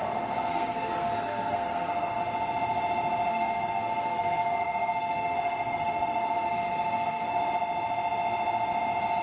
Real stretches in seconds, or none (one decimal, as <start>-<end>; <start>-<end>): 0.0-0.5; 2.2-3.3; 7.4-9.2